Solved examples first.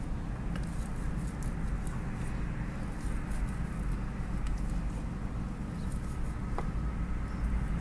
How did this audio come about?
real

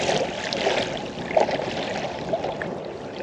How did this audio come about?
real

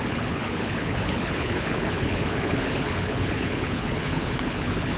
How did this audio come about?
fake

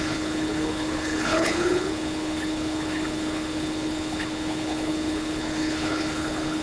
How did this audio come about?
fake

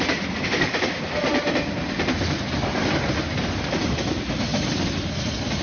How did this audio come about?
real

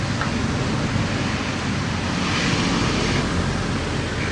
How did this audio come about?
real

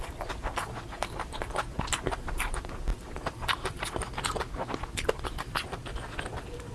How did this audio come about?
real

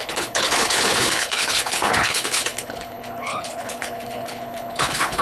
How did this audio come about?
fake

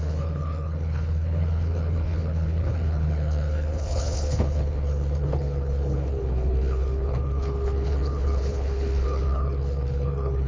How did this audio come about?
fake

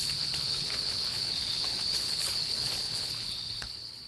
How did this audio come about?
fake